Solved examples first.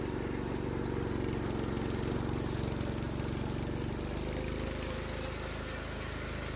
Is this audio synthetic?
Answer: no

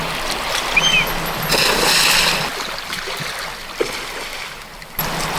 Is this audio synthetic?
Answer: no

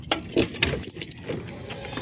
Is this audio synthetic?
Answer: no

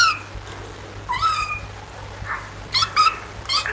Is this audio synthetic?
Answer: no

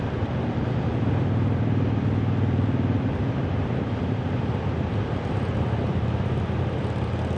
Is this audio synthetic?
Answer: yes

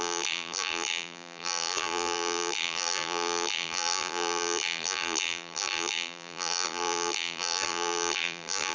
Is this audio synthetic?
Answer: yes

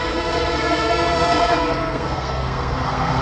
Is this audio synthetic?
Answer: yes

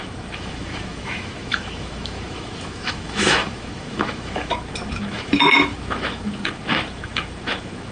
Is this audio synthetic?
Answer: yes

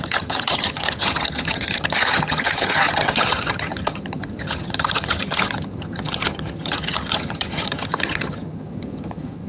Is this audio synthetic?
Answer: yes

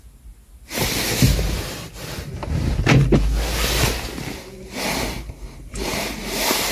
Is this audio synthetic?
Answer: no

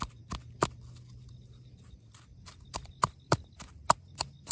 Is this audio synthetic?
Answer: no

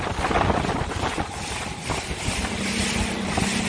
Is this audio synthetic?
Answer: no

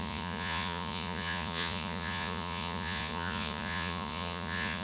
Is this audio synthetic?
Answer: yes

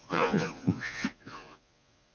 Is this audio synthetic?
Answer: yes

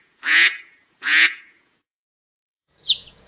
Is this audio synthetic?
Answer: yes